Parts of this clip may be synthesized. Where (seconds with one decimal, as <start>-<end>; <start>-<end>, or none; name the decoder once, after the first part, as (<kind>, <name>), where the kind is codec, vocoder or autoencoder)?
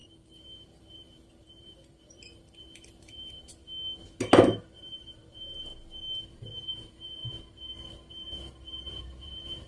0.0-3.6 (vocoder, BigVGAN v2); 4.5-5.7; 6.3-7.2; 8.1-9.7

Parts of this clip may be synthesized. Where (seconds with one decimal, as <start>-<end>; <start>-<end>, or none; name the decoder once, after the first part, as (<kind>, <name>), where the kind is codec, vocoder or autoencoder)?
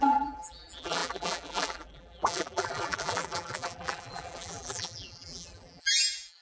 0.0-6.4 (vocoder, BigVGAN v2)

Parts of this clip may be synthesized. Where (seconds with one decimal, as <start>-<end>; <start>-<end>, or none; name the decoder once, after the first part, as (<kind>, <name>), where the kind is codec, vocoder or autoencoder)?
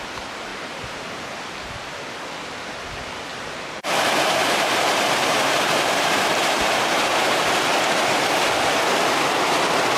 0.5-1.2 (vocoder, BigVGAN v2); 3.3-7.4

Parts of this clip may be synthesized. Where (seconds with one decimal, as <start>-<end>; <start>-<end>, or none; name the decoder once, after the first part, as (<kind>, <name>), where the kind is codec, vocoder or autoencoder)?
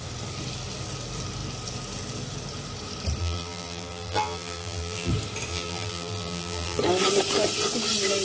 3.2-5.1 (vocoder, BigVGAN v2); 5.5-6.8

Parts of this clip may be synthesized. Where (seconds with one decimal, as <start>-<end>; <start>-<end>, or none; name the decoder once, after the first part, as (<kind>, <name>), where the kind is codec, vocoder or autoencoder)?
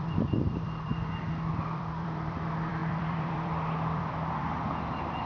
0.0-0.9 (vocoder, BigVGAN v2); 1.5-5.3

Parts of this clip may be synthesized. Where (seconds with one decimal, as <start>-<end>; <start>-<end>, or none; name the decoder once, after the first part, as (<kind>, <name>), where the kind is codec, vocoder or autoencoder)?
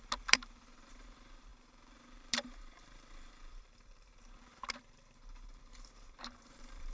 0.0-6.9 (vocoder, BigVGAN v2)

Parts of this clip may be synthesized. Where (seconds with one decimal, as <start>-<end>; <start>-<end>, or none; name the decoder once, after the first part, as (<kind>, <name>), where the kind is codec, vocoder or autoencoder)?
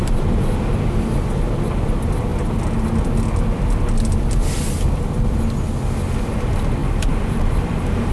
0.0-0.7 (vocoder, BigVGAN v2); 6.8-8.1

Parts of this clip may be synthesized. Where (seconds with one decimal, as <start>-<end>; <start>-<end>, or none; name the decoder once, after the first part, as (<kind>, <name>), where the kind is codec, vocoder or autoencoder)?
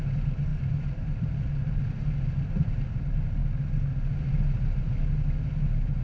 0.5-1.8 (vocoder, BigVGAN v2)